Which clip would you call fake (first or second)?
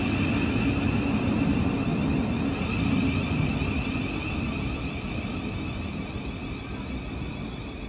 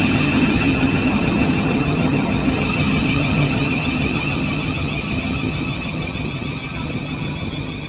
second